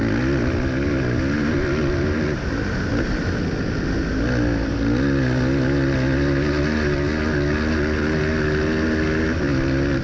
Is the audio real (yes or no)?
yes